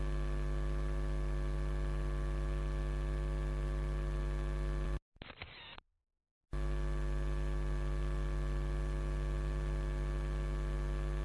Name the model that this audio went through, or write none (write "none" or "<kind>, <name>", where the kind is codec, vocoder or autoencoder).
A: none